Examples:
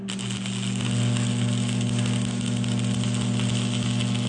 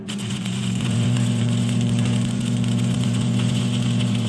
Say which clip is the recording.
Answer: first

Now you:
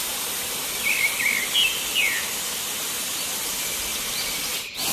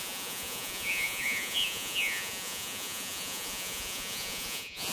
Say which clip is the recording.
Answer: first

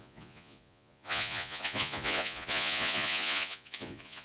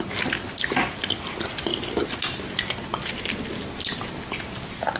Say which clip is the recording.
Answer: second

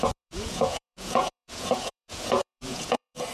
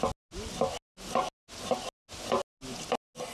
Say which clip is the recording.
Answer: second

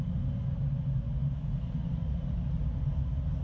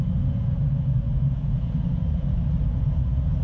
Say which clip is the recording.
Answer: first